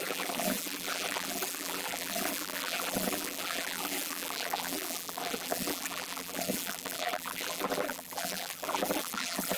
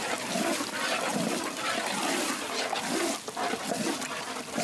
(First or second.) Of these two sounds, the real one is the second